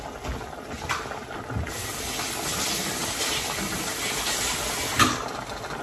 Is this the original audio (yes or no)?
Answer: yes